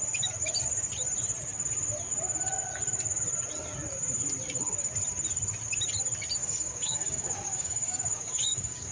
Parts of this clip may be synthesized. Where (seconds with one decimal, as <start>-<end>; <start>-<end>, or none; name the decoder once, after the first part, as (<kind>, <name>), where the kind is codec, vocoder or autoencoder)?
6.4-8.9 (codec, DAC)